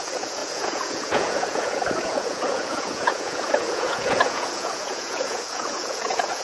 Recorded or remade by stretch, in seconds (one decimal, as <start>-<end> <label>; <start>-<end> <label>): 0.0-6.4 remade